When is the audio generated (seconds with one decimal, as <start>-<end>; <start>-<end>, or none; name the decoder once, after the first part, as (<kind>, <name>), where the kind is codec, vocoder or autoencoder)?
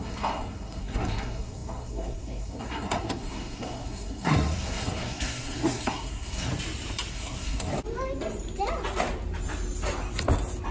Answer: 0.0-6.5 (codec, SNAC); 7.1-7.7